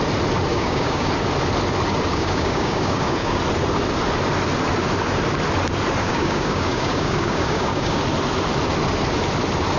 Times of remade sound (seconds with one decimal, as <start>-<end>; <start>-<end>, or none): 0.5-1.1; 2.1-3.4; 6.0-8.0